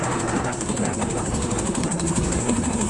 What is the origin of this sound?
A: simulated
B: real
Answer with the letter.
A